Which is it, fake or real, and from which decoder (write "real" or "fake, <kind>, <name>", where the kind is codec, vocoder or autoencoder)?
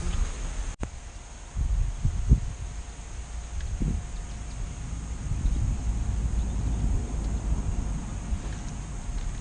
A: real